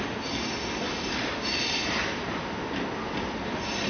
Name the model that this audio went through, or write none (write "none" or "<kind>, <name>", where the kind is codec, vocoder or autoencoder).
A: none